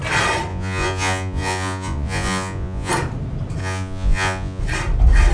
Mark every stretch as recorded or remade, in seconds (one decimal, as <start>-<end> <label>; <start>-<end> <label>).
0.0-0.5 recorded; 0.5-2.9 remade; 2.9-3.6 recorded; 3.6-4.6 remade; 4.6-5.3 recorded